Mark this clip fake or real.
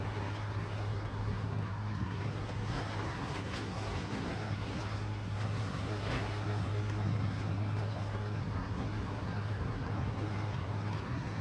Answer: fake